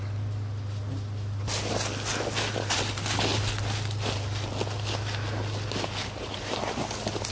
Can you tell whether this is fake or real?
real